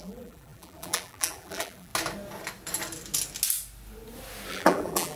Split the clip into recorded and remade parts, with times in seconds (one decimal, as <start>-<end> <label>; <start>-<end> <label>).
0.0-1.9 remade; 1.9-4.5 recorded; 4.5-5.2 remade